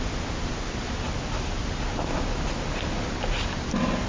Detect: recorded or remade recorded